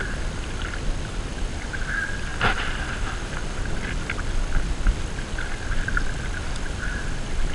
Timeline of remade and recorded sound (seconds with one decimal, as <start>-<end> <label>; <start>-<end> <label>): 0.0-2.3 recorded; 2.3-3.6 remade; 3.6-7.5 recorded